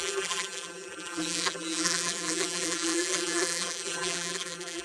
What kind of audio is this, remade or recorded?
remade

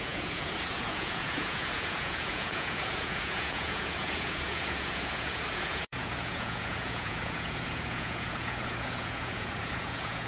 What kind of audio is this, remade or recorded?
remade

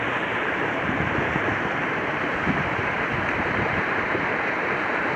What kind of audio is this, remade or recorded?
remade